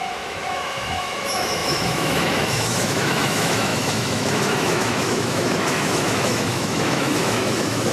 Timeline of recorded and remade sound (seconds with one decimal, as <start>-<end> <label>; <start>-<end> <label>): 0.0-7.9 remade